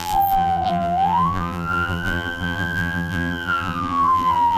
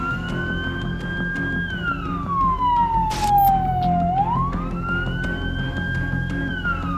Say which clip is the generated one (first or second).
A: first